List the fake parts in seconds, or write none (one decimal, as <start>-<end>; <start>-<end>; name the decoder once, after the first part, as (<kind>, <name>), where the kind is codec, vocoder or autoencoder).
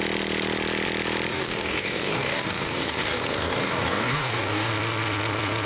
1.3-4.7 (codec, DAC)